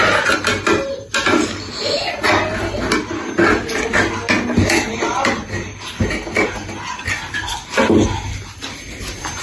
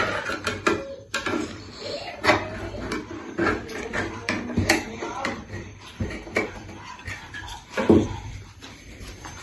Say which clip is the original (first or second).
first